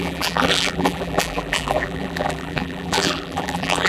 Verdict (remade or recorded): remade